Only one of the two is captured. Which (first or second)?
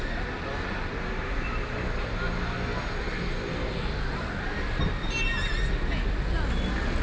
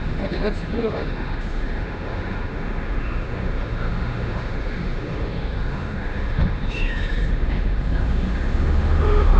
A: first